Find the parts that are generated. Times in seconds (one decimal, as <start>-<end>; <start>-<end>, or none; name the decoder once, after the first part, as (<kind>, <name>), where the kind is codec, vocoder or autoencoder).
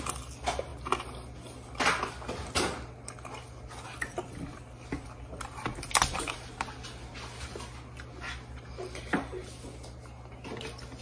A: none